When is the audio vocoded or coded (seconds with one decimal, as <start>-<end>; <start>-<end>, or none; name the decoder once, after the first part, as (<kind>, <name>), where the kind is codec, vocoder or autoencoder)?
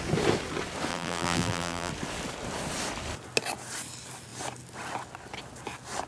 0.9-1.9 (vocoder, BigVGAN v2)